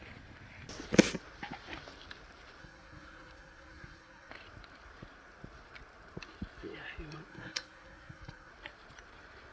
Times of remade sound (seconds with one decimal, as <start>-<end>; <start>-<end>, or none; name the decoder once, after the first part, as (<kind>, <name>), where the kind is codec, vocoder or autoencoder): 2.6-4.3 (codec, SNAC); 7.3-8.5